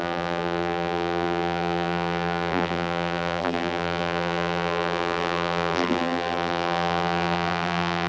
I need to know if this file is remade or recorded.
remade